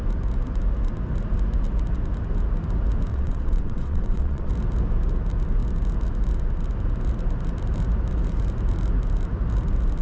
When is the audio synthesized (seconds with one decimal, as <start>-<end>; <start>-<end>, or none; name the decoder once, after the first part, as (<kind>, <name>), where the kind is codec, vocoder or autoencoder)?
3.1-4.5 (vocoder, WaveNeXt)